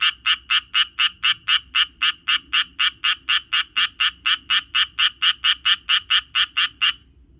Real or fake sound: real